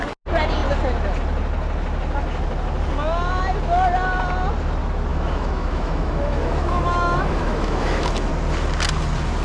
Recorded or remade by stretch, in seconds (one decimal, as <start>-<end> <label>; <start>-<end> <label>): 0.0-5.1 recorded; 5.1-8.3 remade; 8.3-9.4 recorded